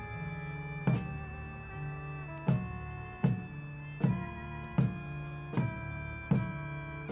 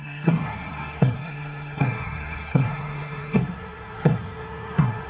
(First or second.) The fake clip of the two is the second